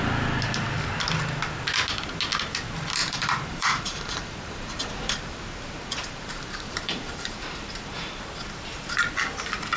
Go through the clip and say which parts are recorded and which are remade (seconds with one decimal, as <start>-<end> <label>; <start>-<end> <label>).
0.0-3.0 recorded; 3.0-8.2 remade; 8.2-9.8 recorded